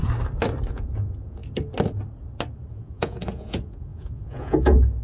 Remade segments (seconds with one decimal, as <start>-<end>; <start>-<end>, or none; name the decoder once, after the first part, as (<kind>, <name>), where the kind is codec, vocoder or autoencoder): 0.7-1.4 (vocoder, Vocos); 2.7-5.0